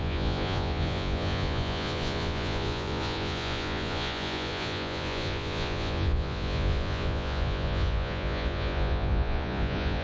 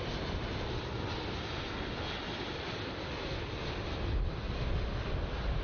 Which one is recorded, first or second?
second